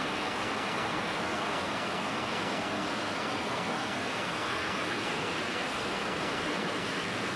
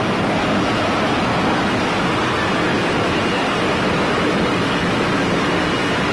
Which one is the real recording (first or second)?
second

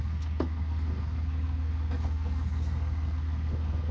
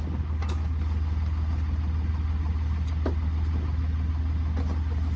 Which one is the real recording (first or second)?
second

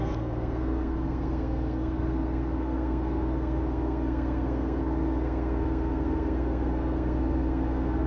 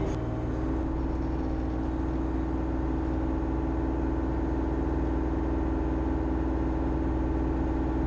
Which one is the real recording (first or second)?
second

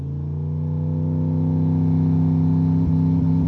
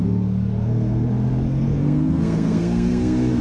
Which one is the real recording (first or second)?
first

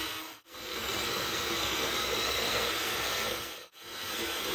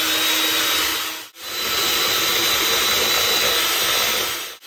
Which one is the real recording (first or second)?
second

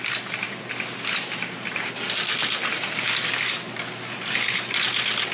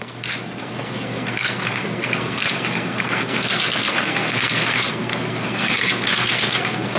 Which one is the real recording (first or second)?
first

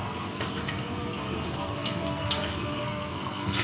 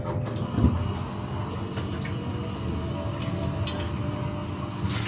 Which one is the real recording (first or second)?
second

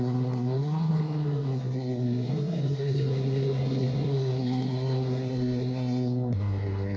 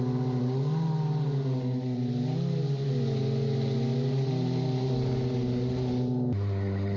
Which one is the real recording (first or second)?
second